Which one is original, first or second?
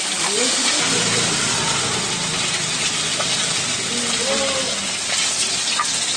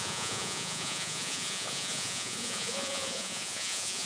first